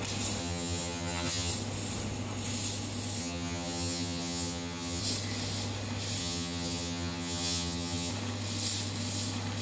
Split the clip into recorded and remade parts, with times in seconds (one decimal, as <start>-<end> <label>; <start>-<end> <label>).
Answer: 0.0-0.4 recorded; 0.4-1.5 remade; 1.5-3.2 recorded; 3.2-5.0 remade; 5.0-6.2 recorded; 6.2-8.1 remade; 8.1-9.6 recorded